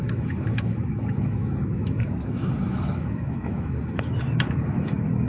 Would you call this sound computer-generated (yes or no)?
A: yes